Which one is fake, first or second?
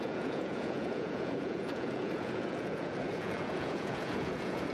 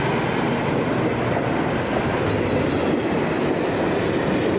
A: first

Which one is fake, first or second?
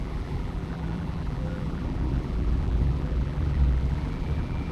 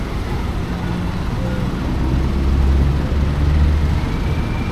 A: first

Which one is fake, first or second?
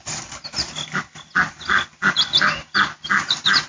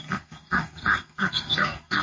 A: second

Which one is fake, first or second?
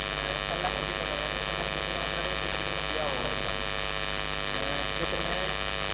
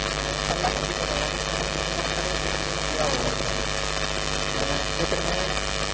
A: second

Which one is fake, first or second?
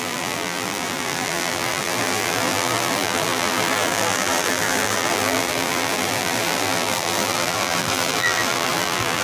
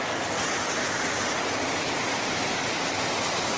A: first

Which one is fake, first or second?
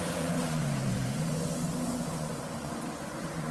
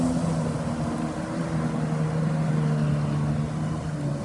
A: first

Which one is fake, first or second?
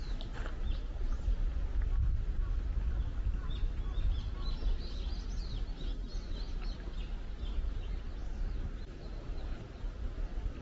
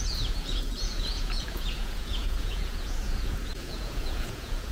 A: second